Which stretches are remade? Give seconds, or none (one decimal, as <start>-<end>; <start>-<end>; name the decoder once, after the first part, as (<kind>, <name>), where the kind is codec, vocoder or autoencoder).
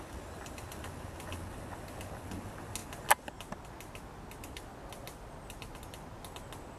none